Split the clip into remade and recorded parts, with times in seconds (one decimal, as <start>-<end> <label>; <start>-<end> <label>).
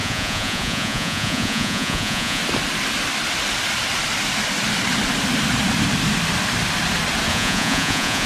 0.0-2.4 remade; 2.4-7.3 recorded; 7.3-8.3 remade